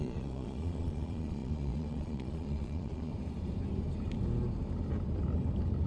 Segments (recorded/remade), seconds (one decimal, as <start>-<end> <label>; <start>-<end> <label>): 0.0-3.1 remade; 3.1-5.9 recorded